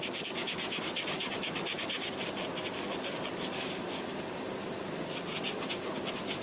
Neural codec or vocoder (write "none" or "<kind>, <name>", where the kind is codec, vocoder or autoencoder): none